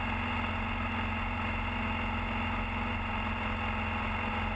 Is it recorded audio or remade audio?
recorded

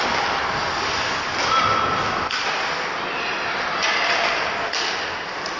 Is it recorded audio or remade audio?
recorded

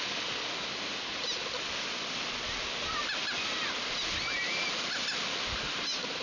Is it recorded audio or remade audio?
recorded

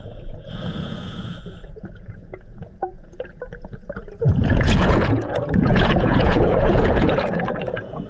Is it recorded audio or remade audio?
remade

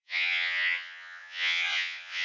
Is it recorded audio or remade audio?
remade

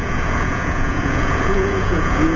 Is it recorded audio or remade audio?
remade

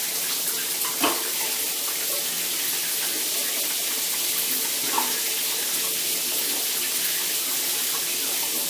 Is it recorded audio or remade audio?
recorded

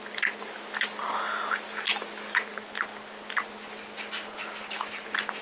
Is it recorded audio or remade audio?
recorded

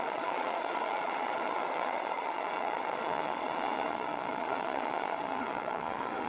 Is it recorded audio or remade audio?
remade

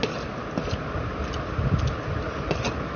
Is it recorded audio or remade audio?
recorded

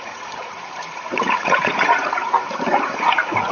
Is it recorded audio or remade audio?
remade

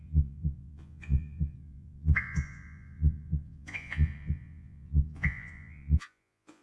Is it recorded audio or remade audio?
remade